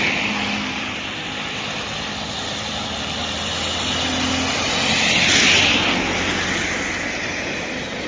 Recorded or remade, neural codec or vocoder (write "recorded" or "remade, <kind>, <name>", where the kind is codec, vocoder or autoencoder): recorded